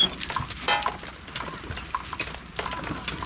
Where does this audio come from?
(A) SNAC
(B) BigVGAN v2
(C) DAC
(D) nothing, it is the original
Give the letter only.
D